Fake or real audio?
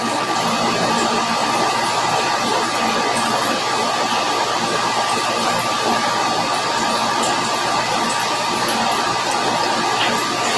real